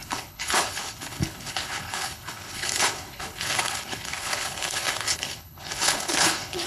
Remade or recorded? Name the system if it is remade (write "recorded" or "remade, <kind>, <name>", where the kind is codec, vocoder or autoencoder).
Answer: remade, codec, HILCodec